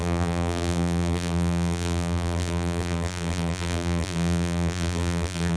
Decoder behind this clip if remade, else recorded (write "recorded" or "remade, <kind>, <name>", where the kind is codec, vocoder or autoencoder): remade, vocoder, BigVGAN v2